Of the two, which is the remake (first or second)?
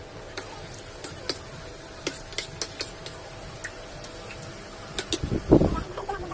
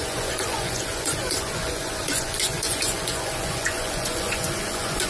second